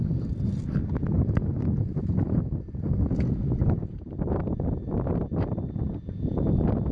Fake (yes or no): no